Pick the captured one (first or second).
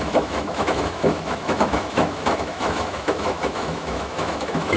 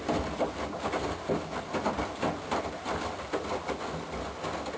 second